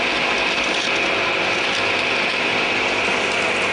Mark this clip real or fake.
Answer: real